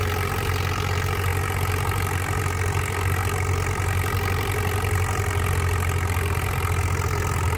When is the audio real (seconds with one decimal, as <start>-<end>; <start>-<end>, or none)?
0.0-7.6